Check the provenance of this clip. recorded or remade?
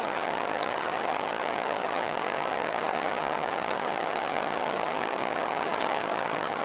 remade